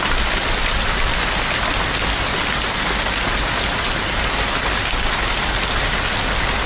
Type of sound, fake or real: real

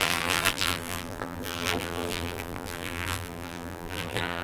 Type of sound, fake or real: fake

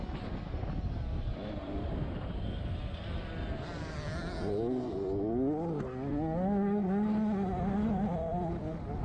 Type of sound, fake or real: real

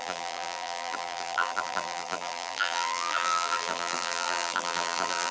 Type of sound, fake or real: fake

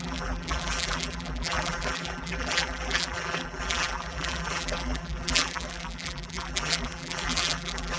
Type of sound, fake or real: fake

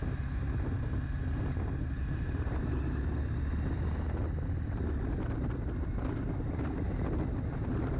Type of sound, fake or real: real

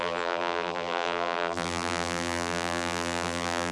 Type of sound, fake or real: fake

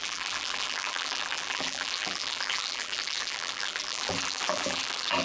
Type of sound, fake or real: fake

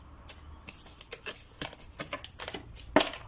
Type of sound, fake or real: real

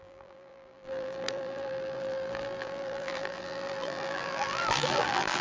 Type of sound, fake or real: fake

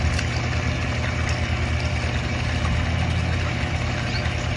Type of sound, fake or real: real